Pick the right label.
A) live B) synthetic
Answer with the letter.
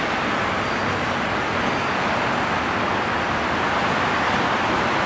A